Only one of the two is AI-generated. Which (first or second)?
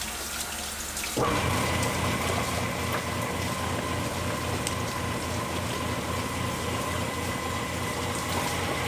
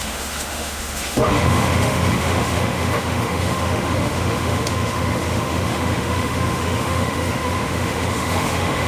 second